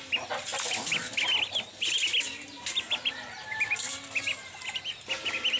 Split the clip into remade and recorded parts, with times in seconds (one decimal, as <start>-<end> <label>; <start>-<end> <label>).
0.0-5.6 recorded